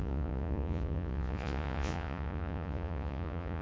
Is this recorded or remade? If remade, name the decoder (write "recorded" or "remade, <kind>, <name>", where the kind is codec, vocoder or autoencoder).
remade, vocoder, Vocos